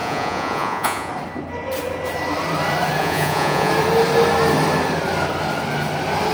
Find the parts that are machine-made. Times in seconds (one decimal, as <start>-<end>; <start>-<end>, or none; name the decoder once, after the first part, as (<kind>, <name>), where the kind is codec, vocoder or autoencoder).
0.0-1.1 (vocoder, Vocos); 3.0-3.7